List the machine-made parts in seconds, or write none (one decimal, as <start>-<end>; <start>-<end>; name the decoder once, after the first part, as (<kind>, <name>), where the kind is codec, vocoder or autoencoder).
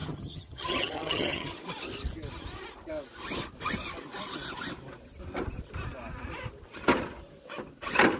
0.0-1.6 (vocoder, HiFi-GAN)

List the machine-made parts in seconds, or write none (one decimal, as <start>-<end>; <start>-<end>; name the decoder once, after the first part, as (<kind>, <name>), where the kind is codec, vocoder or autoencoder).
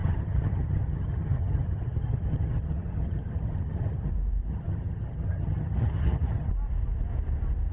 0.0-4.1 (vocoder, HiFi-GAN); 4.5-6.5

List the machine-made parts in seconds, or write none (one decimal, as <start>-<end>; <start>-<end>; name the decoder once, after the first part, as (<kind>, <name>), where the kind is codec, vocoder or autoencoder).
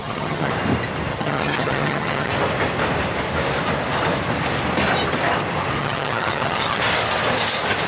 0.0-0.5 (vocoder, HiFi-GAN); 1.1-2.3; 5.8-6.8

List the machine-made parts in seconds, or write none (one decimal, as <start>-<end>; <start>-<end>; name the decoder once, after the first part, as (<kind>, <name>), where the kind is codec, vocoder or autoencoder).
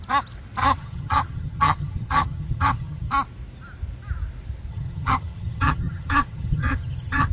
0.6-3.1 (vocoder, HiFi-GAN); 4.7-7.3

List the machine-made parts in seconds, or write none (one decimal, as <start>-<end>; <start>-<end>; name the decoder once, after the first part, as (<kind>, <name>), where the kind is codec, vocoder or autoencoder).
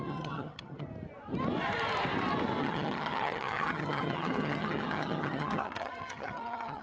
0.0-0.9 (vocoder, HiFi-GAN); 2.6-6.8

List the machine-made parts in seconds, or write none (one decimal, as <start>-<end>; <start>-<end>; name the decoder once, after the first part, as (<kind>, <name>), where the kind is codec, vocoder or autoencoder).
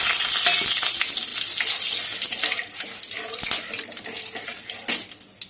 none